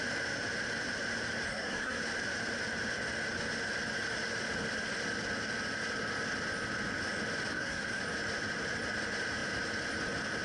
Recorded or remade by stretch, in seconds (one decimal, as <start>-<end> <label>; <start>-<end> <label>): 0.0-1.5 recorded; 1.5-2.0 remade; 2.0-7.5 recorded; 7.5-8.0 remade; 8.0-10.4 recorded